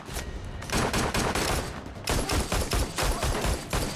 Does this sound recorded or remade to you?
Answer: remade